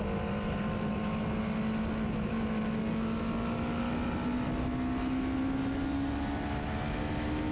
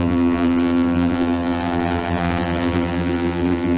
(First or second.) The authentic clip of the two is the first